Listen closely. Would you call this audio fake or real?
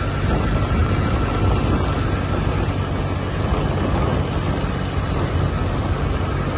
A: real